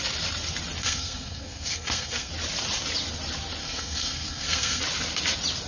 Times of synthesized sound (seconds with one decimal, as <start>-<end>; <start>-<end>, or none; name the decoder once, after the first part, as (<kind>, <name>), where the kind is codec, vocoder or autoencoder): 0.8-2.3 (codec, SNAC); 3.6-4.8